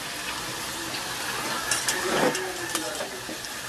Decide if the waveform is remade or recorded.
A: recorded